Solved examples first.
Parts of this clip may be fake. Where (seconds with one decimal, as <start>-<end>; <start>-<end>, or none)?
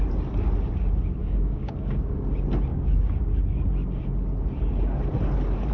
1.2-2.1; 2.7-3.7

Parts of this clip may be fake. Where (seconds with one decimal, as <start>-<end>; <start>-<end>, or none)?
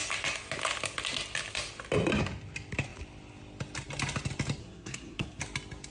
4.6-5.4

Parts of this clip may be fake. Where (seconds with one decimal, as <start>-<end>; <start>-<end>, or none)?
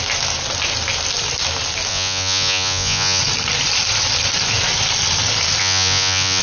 1.9-3.2; 5.6-6.4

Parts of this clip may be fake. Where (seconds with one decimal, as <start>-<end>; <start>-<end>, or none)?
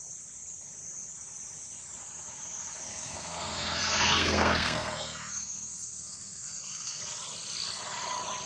2.9-7.0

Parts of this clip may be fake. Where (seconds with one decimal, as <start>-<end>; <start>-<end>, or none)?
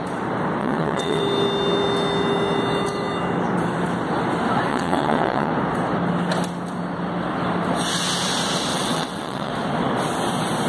0.6-1.2; 4.7-5.5; 8.7-9.5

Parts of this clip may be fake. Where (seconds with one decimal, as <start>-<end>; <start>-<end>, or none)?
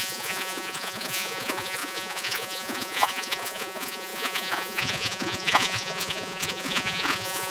0.0-7.5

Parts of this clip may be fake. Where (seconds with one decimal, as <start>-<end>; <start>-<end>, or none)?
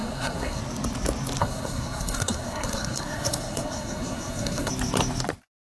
0.0-0.6; 1.4-4.7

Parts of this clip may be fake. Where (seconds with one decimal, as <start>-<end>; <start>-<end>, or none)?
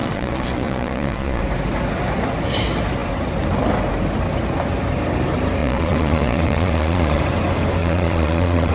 0.0-1.4; 5.6-7.2; 7.8-8.7